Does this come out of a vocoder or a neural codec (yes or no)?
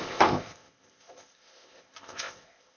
yes